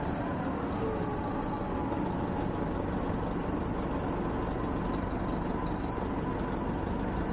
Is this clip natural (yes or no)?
yes